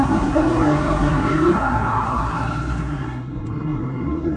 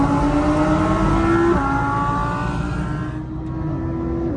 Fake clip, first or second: first